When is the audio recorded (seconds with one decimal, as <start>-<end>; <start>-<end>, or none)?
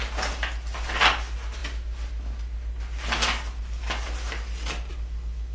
0.0-5.5